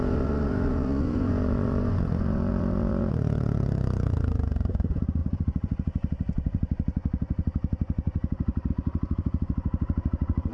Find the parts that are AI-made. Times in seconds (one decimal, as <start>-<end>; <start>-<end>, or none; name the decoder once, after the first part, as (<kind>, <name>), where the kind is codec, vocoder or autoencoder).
0.0-10.5 (vocoder, Vocos)